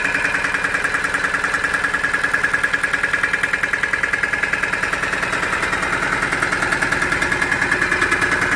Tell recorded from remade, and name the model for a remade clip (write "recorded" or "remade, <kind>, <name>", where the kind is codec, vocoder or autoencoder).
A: recorded